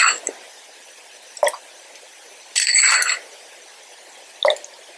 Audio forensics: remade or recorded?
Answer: recorded